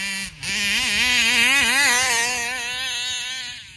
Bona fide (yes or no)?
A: yes